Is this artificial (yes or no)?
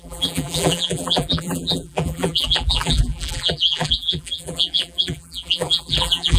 yes